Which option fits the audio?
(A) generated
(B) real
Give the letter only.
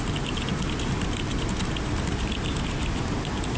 B